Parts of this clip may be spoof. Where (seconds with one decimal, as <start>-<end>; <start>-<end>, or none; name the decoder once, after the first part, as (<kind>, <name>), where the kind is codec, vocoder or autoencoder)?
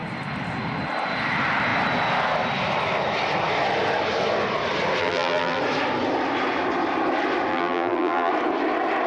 5.0-5.6 (vocoder, BigVGAN v2); 7.5-8.3